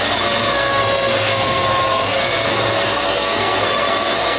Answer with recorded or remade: remade